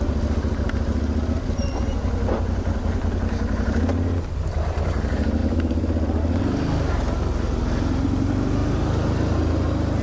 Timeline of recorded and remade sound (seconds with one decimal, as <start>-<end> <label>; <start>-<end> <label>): 0.0-5.4 recorded; 5.4-6.2 remade; 6.2-10.0 recorded